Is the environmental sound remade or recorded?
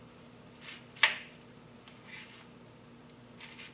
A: recorded